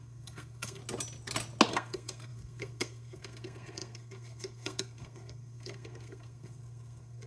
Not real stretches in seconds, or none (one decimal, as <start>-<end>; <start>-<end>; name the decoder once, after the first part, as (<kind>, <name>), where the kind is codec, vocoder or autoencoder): 0.0-0.8 (codec, SNAC); 1.7-7.3